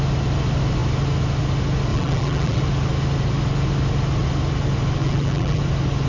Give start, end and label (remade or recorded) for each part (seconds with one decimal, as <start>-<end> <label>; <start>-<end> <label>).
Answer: 0.0-1.9 recorded; 1.9-2.6 remade; 2.6-5.0 recorded; 5.0-5.6 remade; 5.6-6.1 recorded